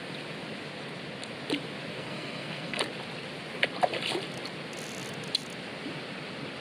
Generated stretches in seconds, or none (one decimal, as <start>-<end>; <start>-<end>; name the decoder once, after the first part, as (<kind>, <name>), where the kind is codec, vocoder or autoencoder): 1.9-2.8 (codec, SNAC)